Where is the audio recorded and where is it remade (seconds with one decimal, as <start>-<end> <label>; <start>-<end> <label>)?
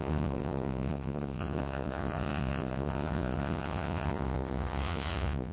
0.0-5.5 remade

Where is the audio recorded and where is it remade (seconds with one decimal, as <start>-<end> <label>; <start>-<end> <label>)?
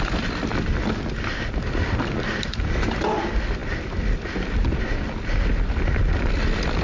0.0-6.8 recorded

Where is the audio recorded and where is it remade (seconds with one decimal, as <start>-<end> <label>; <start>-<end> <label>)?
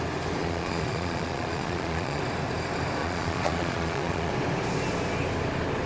0.0-0.4 recorded; 0.4-2.2 remade; 2.2-3.0 recorded; 3.0-4.3 remade; 4.3-5.9 recorded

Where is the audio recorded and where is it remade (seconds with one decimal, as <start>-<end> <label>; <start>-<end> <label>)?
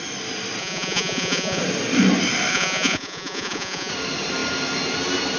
0.0-0.6 recorded; 0.6-1.6 remade; 1.6-2.5 recorded; 2.5-3.9 remade; 3.9-5.4 recorded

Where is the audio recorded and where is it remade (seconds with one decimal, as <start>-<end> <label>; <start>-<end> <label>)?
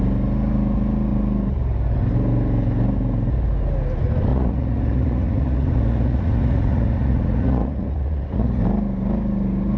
0.0-4.3 recorded; 4.3-8.6 remade; 8.6-9.8 recorded